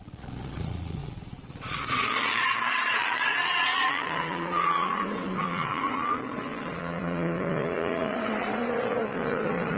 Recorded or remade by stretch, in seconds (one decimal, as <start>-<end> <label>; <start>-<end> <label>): 0.0-9.8 remade